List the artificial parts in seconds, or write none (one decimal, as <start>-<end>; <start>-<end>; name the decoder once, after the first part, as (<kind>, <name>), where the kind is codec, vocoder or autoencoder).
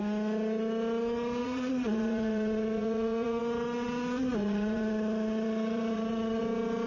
1.4-3.4 (vocoder, Vocos); 4.4-6.4